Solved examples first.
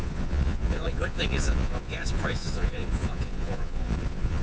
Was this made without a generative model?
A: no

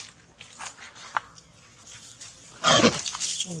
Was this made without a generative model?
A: yes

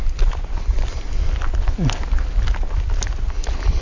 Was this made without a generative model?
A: yes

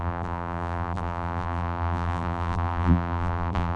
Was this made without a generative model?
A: no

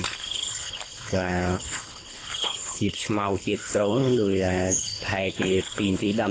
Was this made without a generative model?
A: no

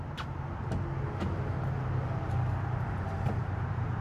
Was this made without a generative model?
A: yes